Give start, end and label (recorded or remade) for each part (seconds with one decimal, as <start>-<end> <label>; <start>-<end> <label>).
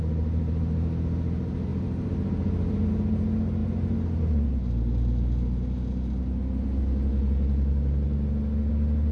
0.0-1.7 recorded; 1.7-2.9 remade; 2.9-9.1 recorded